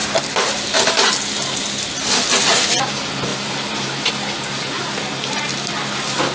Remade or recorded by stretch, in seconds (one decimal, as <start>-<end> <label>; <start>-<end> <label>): 0.0-0.9 remade; 0.9-3.3 recorded; 3.3-4.1 remade; 4.1-6.3 recorded